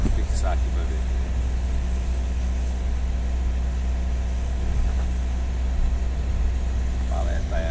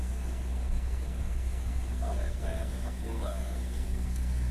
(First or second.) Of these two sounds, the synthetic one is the second